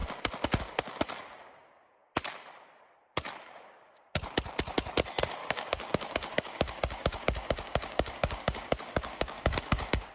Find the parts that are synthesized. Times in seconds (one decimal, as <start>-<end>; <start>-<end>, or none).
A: 5.4-10.1